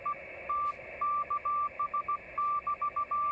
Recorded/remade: recorded